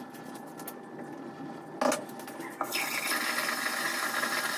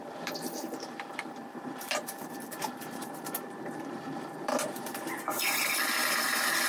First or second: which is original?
first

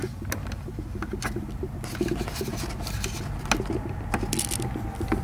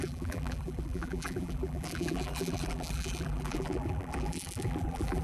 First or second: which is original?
first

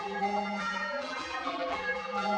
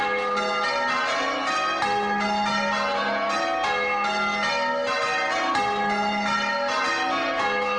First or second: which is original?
second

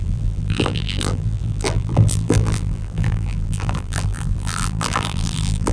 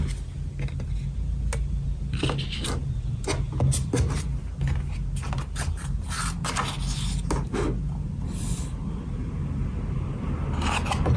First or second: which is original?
second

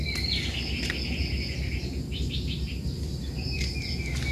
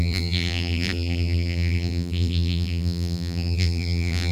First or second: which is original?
first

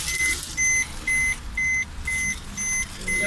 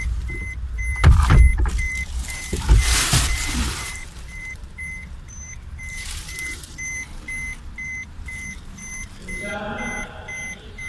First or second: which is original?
first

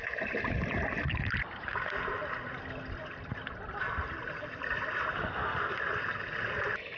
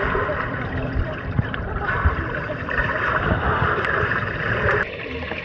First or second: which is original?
first